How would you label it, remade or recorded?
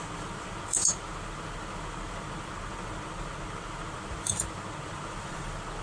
recorded